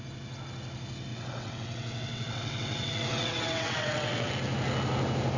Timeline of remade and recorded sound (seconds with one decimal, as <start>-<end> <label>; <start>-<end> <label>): 0.0-1.1 recorded; 1.1-4.3 remade; 4.3-5.4 recorded